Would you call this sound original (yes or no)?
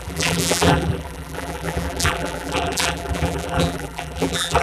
no